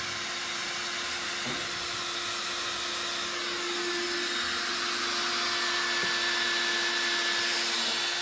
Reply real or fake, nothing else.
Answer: real